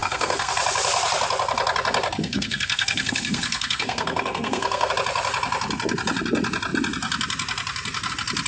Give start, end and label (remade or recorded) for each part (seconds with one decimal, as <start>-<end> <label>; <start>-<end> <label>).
0.0-0.5 remade; 0.5-2.2 recorded; 2.2-4.9 remade; 4.9-8.5 recorded